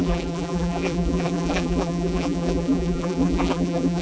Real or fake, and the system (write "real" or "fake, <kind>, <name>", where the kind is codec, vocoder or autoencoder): fake, vocoder, BigVGAN v2